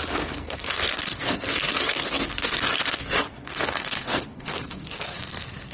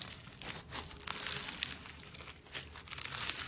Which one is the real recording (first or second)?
second